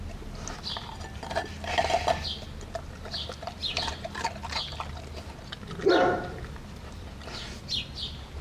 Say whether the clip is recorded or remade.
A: recorded